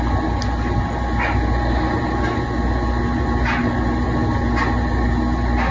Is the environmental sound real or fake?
real